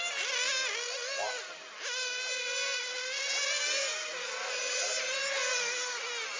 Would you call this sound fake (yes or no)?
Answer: no